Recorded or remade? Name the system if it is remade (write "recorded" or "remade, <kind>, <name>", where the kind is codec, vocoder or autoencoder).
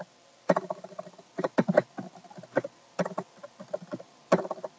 recorded